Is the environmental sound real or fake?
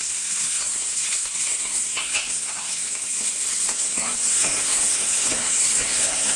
fake